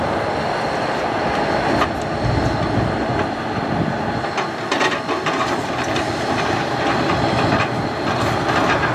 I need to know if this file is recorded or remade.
recorded